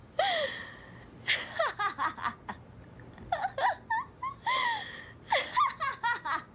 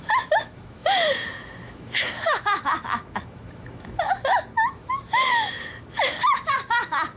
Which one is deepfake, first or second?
second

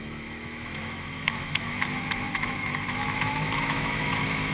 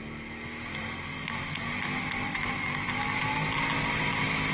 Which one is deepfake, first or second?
first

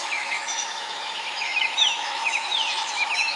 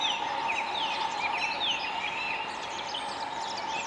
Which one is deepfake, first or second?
first